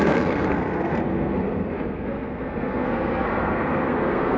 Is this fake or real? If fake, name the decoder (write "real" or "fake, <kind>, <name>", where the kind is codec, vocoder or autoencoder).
fake, codec, SNAC